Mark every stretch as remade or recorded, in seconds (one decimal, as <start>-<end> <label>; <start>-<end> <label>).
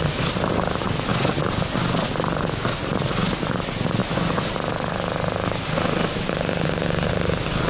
0.0-7.7 recorded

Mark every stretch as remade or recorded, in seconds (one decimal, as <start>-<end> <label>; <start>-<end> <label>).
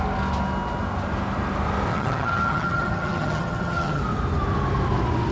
0.0-1.9 recorded; 1.9-4.0 remade; 4.0-5.3 recorded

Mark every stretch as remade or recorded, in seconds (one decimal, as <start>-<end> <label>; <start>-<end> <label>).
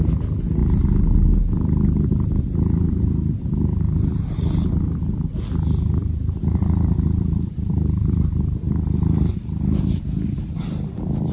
0.0-6.0 recorded; 6.0-7.7 remade; 7.7-9.3 recorded; 9.3-9.9 remade; 9.9-11.3 recorded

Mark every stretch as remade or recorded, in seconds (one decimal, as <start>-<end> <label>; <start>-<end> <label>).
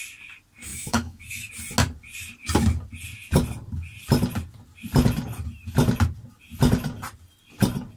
0.0-0.7 recorded; 0.7-1.5 remade; 1.5-8.0 recorded